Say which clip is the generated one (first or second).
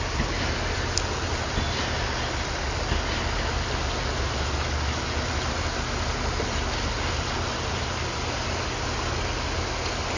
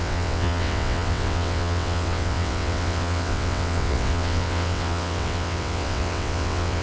second